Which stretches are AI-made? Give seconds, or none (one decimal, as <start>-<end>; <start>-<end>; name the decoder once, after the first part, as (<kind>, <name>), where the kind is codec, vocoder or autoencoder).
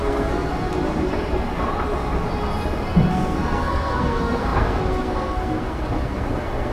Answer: 0.0-0.5 (codec, SNAC); 3.1-6.7